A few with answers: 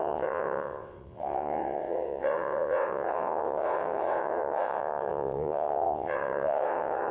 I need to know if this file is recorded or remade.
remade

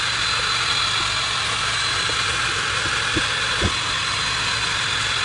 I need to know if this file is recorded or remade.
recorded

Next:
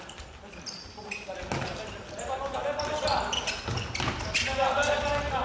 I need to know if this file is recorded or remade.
recorded